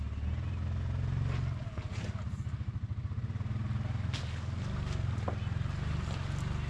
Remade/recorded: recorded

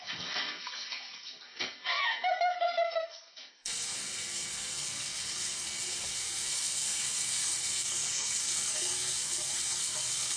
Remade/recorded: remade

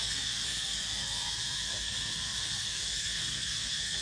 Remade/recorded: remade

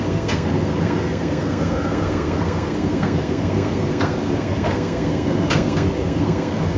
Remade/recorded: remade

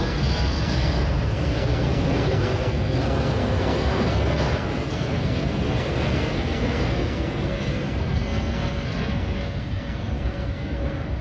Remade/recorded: remade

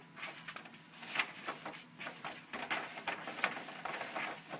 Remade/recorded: recorded